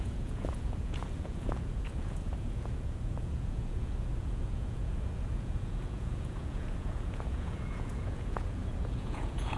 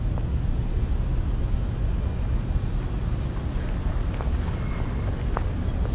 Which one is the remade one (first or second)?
first